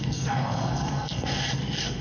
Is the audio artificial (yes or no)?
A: yes